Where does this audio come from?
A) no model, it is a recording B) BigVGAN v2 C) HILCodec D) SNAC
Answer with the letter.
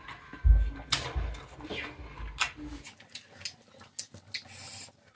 A